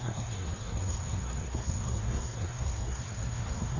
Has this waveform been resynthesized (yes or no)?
yes